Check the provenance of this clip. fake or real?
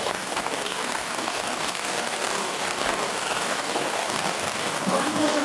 fake